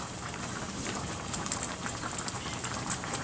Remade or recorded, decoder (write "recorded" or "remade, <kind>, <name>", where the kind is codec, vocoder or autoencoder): remade, vocoder, BigVGAN v2